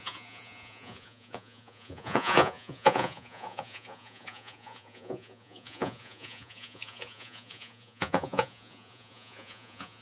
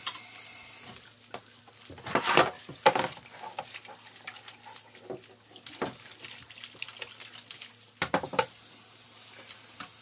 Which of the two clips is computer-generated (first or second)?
first